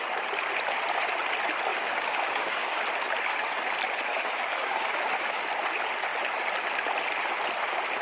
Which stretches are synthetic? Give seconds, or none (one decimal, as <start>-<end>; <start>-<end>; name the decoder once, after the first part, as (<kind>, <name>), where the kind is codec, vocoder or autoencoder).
1.7-2.8 (codec, DAC); 4.1-4.9